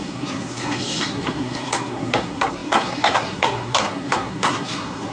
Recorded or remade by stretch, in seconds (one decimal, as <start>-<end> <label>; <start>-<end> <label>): 0.0-5.1 remade

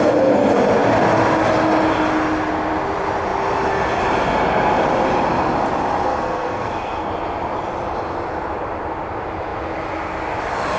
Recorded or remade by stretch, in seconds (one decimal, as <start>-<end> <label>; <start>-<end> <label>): 0.0-6.1 recorded; 6.1-7.1 remade; 7.1-10.8 recorded

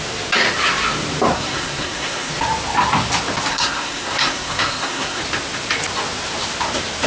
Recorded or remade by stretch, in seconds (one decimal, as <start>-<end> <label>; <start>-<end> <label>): 0.0-1.3 recorded; 1.3-2.3 remade; 2.3-3.5 recorded; 3.5-5.2 remade; 5.2-7.1 recorded